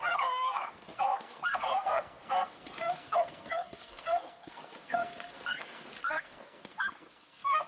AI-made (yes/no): yes